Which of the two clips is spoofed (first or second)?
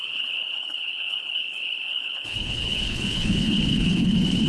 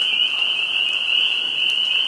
first